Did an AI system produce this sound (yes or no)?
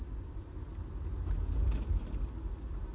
no